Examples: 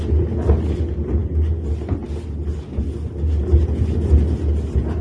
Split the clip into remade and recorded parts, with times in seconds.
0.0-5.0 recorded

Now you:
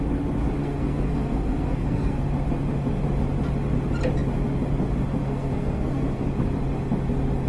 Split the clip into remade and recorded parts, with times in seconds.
0.0-0.6 recorded; 0.6-2.2 remade; 2.2-5.2 recorded; 5.2-6.2 remade; 6.2-7.5 recorded